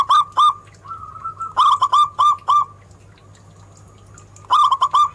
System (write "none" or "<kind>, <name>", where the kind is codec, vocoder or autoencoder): none